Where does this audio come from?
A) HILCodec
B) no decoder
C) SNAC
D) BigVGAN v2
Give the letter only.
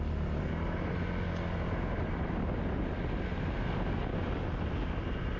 B